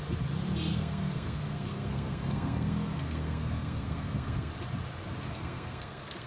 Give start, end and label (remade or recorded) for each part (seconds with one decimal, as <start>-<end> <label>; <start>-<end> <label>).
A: 0.0-0.7 recorded; 0.7-4.5 remade; 4.5-5.3 recorded; 5.3-6.3 remade